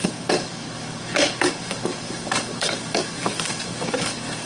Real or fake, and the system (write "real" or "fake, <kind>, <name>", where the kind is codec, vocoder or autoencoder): fake, codec, DAC